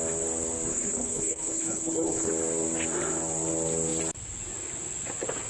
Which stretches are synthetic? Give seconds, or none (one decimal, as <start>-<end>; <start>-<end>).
0.7-2.3